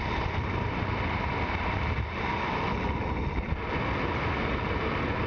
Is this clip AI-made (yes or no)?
no